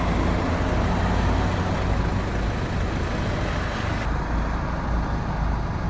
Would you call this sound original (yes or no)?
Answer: yes